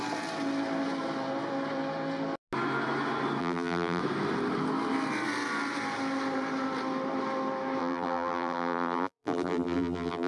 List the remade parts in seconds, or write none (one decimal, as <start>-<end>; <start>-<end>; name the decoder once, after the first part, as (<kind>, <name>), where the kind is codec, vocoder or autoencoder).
3.4-4.0 (vocoder, BigVGAN v2); 7.8-10.3